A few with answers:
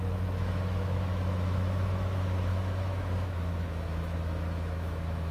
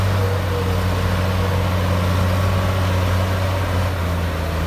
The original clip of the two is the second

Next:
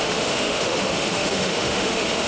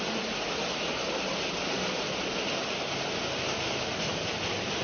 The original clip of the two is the second